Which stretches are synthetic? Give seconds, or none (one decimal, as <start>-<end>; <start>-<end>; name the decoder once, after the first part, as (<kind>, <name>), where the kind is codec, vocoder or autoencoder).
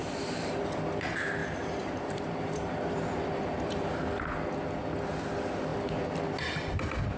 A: 0.0-0.6 (vocoder, BigVGAN v2); 1.4-3.9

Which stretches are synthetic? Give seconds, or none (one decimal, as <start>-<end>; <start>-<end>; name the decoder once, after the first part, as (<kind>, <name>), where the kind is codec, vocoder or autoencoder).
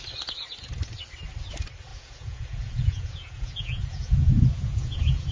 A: 1.9-5.3 (vocoder, Vocos)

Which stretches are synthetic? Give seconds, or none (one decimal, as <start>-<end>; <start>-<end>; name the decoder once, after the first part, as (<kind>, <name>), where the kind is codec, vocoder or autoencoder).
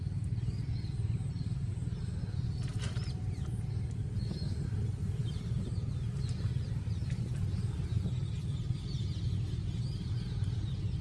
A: 5.2-7.3 (vocoder, BigVGAN v2); 7.9-8.8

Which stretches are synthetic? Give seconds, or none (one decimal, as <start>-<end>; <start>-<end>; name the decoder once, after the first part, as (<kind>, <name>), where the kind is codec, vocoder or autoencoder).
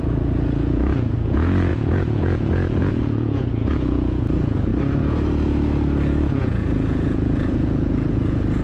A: 0.0-4.7 (vocoder, Vocos); 6.2-8.6